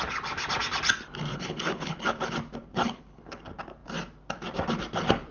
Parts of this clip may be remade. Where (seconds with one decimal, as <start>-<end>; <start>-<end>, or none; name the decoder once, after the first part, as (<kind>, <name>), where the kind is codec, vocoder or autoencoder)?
1.3-2.3 (codec, HILCodec); 2.8-3.4